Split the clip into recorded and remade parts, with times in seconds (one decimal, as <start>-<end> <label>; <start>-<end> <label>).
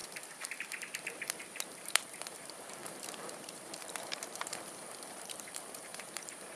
0.0-6.6 remade